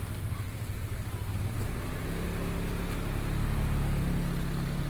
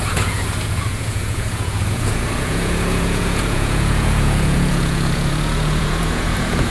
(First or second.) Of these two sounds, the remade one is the second